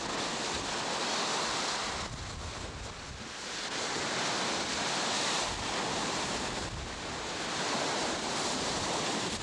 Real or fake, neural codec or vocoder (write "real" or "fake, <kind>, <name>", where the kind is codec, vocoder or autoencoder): real